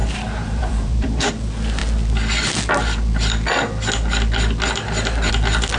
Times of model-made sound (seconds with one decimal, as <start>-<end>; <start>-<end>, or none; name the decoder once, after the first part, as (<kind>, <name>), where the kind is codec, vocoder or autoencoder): 0.0-1.3 (vocoder, BigVGAN v2)